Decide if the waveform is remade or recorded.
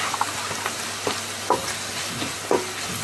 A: recorded